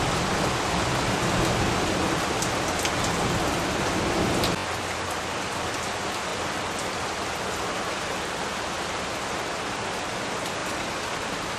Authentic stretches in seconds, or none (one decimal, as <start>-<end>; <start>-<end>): 0.0-11.6